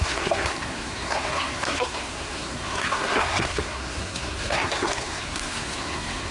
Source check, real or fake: fake